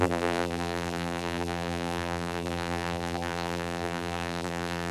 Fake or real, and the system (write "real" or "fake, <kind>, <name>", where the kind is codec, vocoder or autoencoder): fake, vocoder, BigVGAN v2